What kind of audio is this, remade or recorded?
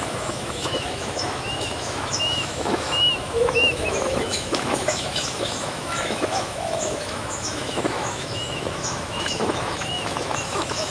remade